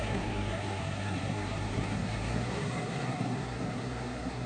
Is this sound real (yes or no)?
no